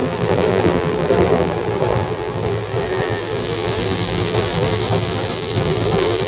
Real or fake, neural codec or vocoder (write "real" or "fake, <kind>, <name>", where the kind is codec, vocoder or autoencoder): fake, vocoder, BigVGAN v2